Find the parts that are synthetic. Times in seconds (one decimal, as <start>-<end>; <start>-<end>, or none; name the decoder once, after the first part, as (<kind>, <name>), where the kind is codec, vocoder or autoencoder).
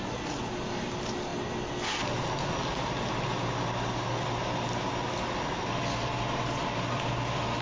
none